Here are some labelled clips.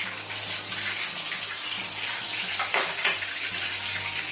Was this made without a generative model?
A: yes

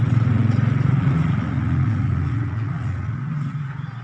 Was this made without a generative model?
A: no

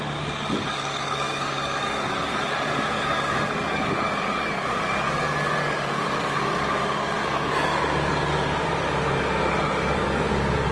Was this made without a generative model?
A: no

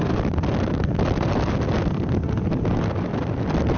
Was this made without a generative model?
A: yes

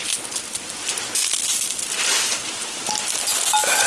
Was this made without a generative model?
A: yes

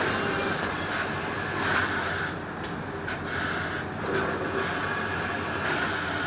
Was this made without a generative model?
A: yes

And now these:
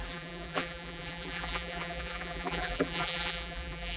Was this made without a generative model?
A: no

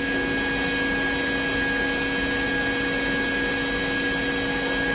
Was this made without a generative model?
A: yes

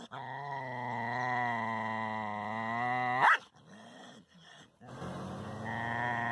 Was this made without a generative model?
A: yes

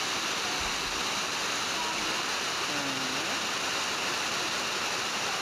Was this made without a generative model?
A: yes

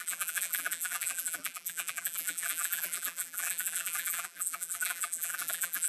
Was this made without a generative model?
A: no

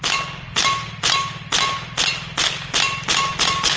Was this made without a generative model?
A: yes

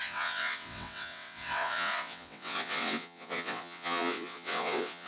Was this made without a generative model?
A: no